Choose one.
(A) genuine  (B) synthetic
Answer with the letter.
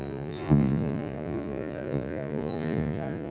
B